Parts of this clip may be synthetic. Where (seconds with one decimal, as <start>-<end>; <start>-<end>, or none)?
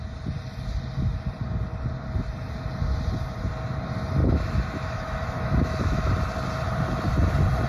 4.2-6.1